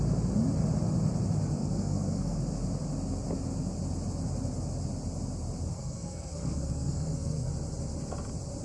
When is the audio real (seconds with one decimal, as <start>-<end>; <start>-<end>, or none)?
0.0-1.6; 2.4-5.7; 7.5-8.6